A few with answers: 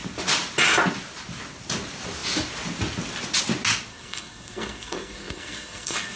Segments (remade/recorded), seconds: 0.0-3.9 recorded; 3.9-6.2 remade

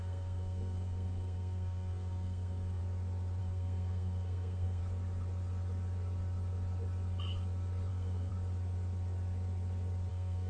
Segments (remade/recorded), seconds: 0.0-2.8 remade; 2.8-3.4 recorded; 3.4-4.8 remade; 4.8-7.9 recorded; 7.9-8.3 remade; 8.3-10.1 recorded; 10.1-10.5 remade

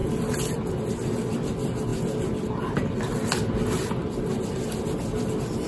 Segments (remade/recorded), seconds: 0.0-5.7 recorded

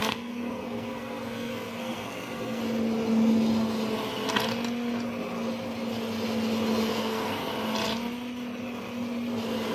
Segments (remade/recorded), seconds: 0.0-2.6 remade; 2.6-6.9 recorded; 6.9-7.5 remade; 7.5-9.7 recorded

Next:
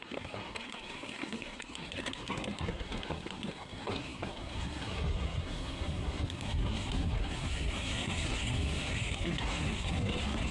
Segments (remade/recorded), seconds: 0.0-10.5 remade